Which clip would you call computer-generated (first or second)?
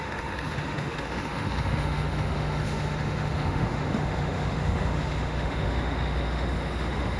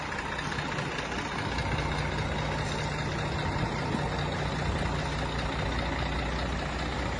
first